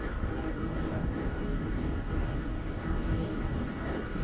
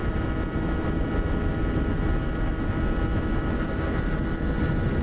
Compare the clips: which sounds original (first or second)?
second